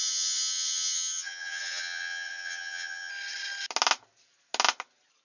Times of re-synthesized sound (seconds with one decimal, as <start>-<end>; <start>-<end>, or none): 0.0-3.1